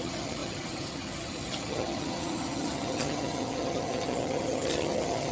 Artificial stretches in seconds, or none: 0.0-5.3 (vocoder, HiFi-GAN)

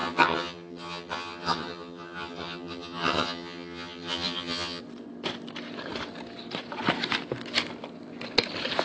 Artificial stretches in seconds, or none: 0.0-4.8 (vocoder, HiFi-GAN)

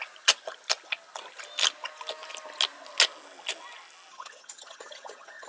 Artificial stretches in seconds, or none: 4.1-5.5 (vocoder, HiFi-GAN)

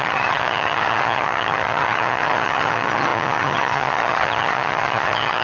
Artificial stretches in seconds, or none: 0.0-5.4 (vocoder, HiFi-GAN)